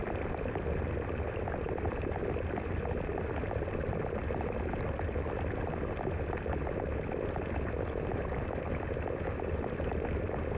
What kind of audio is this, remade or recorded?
recorded